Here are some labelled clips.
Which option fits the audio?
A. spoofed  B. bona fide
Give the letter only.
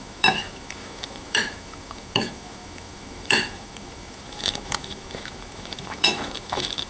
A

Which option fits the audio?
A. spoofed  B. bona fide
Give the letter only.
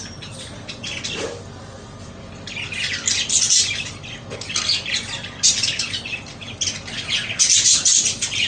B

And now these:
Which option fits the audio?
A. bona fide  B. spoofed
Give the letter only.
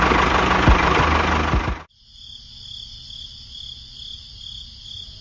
A